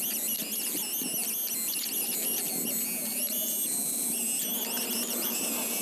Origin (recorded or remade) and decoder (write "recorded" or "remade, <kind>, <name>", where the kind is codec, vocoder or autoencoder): recorded